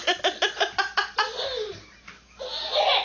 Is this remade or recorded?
recorded